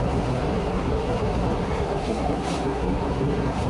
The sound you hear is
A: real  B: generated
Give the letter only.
B